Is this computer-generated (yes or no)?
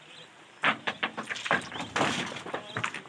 no